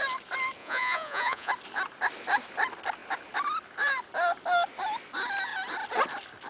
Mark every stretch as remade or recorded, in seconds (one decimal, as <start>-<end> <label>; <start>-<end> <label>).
0.0-0.6 recorded; 0.6-1.5 remade; 1.5-6.5 recorded